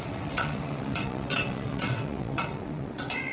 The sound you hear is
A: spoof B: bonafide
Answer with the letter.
A